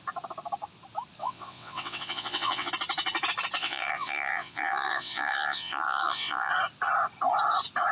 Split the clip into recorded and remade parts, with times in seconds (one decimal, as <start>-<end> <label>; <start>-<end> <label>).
0.0-1.2 recorded; 1.2-2.7 remade; 2.7-3.6 recorded; 3.6-6.5 remade; 6.5-7.9 recorded

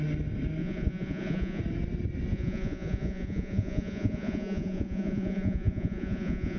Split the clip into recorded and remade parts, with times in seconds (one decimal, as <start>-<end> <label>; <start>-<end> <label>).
0.0-0.6 recorded; 0.6-1.6 remade; 1.6-2.3 recorded; 2.3-6.6 remade

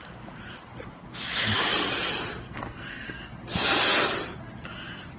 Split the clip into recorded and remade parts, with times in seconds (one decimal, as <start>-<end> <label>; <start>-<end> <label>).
0.0-2.4 recorded; 2.4-3.3 remade; 3.3-5.2 recorded

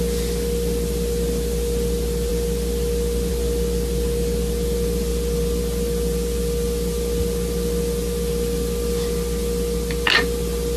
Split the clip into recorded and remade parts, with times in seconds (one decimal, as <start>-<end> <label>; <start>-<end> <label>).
0.0-10.8 recorded

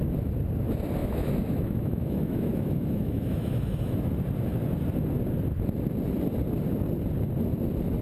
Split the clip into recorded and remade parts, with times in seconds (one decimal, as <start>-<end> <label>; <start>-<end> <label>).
0.0-1.0 recorded; 1.0-4.0 remade; 4.0-8.0 recorded

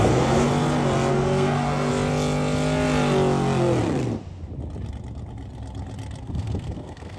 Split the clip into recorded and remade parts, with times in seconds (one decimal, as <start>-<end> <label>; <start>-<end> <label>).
0.0-0.5 remade; 0.5-1.1 recorded; 1.1-1.9 remade; 1.9-6.2 recorded; 6.2-7.2 remade